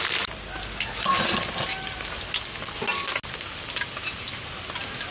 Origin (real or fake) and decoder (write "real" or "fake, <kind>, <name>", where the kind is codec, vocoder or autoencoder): real